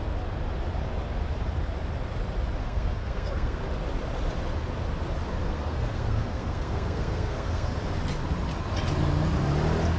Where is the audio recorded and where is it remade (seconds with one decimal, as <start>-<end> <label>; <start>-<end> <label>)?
0.0-2.6 recorded; 2.6-3.6 remade; 3.6-5.4 recorded; 5.4-7.7 remade; 7.7-10.0 recorded